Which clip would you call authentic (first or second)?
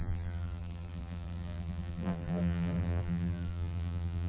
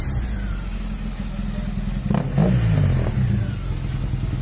second